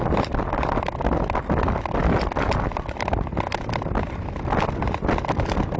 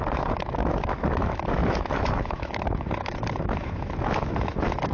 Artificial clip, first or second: second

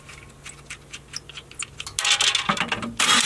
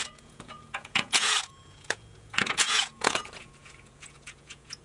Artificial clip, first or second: second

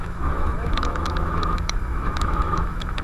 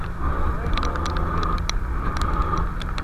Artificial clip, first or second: first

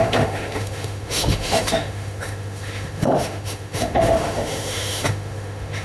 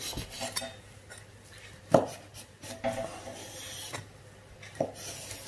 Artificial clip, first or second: first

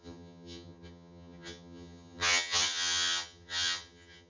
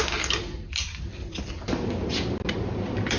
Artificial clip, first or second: first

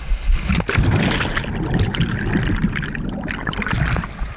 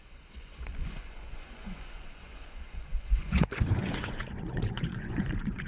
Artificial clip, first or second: second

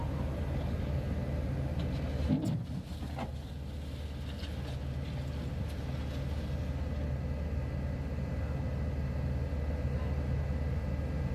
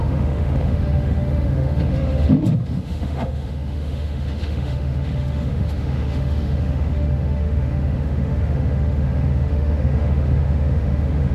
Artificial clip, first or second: second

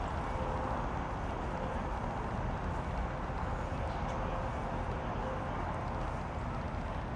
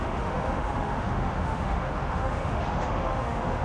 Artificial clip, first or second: second